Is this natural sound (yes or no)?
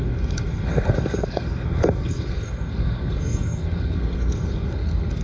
no